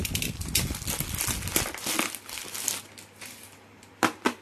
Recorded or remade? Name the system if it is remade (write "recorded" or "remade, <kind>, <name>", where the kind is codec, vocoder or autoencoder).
recorded